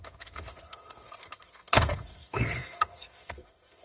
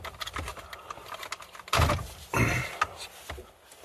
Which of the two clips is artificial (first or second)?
first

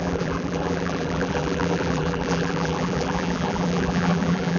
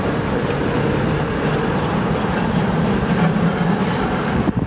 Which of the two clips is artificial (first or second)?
first